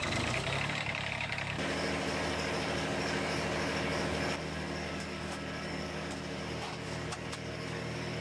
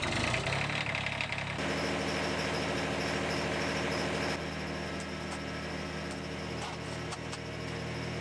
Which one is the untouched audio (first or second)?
second